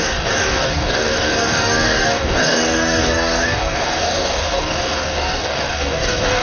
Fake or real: fake